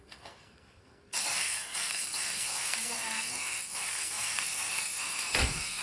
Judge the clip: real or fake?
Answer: fake